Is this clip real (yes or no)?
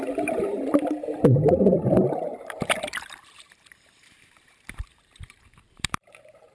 no